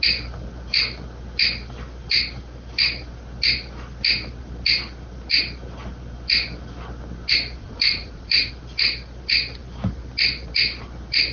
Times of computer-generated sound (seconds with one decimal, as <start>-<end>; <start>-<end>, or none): 7.6-8.5